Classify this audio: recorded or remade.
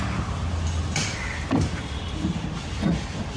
recorded